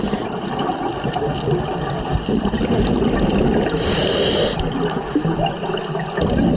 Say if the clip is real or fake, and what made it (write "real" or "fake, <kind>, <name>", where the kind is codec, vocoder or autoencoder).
real